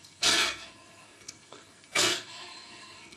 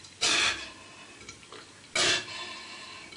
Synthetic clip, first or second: first